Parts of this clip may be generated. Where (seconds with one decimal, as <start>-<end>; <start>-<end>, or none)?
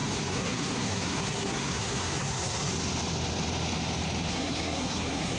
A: 0.0-2.7; 4.3-5.4